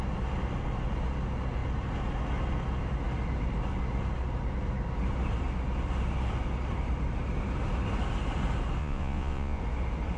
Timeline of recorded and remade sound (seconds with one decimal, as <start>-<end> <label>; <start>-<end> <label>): 0.0-8.8 recorded; 8.8-9.6 remade; 9.6-10.2 recorded